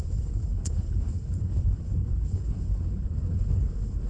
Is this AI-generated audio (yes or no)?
yes